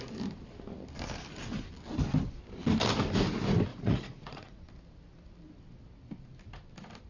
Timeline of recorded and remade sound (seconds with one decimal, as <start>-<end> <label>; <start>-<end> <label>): 0.0-3.7 recorded; 3.7-4.6 remade; 4.6-7.1 recorded